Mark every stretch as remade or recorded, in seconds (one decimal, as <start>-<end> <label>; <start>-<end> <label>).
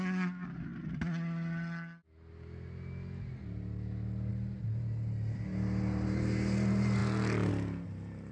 0.0-8.3 recorded